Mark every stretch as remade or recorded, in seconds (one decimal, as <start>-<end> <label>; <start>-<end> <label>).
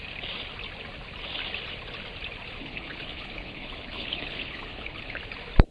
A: 0.0-2.6 recorded; 2.6-5.2 remade; 5.2-5.7 recorded